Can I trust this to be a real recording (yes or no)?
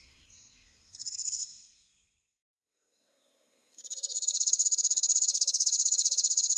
no